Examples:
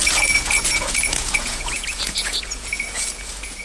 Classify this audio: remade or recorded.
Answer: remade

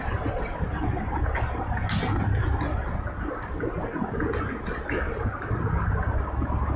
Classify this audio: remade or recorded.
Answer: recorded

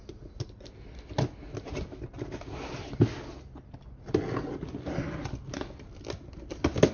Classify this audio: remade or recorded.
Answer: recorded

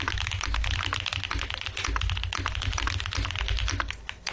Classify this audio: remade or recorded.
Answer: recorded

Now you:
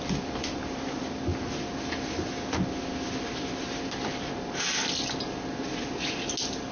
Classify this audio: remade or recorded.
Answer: recorded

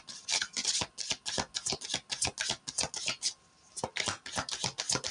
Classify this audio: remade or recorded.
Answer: recorded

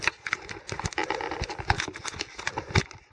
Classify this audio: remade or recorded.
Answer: recorded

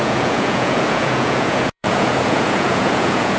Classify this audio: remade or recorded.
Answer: remade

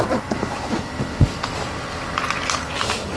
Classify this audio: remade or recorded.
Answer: recorded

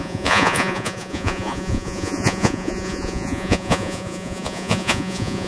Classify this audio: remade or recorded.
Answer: remade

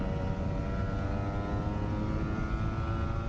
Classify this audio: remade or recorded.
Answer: recorded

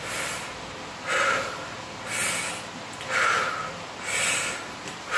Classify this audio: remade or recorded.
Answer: recorded